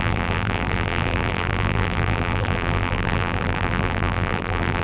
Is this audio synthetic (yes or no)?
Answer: yes